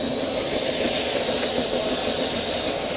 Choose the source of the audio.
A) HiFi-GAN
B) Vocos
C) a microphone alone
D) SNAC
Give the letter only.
C